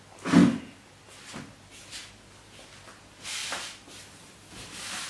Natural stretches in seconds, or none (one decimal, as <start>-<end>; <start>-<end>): 0.0-5.1